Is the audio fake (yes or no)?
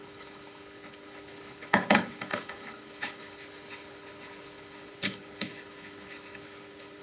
yes